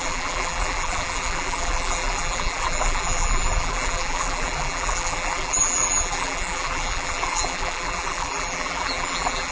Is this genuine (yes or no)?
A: no